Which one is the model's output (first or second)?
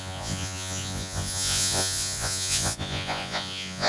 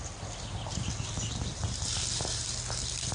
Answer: first